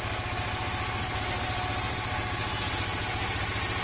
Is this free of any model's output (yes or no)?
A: yes